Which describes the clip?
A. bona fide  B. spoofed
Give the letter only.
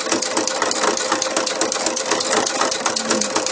A